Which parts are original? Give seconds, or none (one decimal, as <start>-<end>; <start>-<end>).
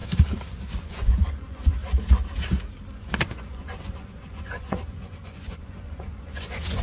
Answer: 0.0-0.8; 1.8-2.9